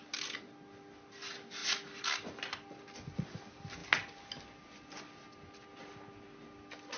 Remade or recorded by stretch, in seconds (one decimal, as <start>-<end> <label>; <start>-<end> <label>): 0.0-7.0 recorded